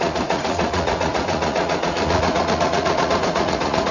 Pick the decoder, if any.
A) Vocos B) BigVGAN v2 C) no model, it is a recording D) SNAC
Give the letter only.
A